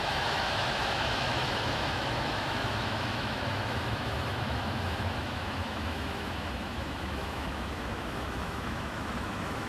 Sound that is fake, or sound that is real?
fake